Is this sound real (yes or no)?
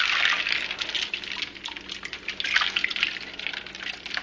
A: yes